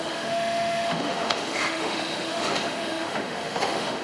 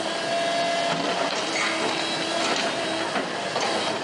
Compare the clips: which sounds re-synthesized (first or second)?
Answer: first